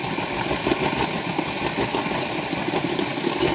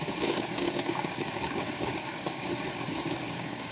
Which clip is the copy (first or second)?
second